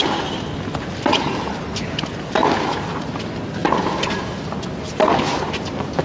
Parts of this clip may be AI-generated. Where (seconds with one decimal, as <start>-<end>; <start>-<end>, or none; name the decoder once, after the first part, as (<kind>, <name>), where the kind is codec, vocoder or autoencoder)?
none